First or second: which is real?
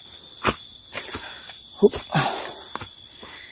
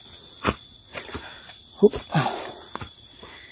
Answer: first